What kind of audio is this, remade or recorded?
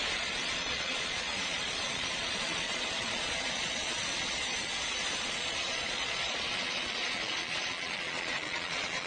remade